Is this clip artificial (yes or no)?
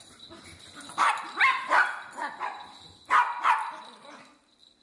no